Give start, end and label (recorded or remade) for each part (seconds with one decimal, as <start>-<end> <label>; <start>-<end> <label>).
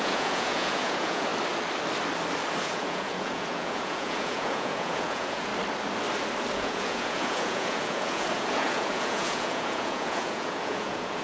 0.0-1.3 remade; 1.3-2.6 recorded; 2.6-5.5 remade; 5.5-6.5 recorded; 6.5-11.2 remade